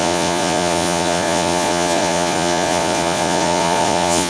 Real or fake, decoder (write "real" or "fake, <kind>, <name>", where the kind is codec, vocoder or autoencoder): fake, vocoder, Vocos